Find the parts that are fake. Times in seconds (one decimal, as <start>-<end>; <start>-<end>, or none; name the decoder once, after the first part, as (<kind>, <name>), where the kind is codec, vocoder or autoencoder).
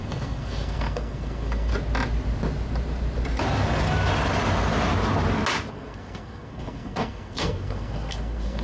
0.0-1.7 (codec, SNAC); 5.7-8.6